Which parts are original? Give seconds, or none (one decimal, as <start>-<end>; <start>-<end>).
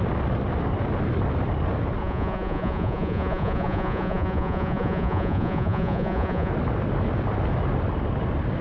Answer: 0.0-2.0; 6.5-8.6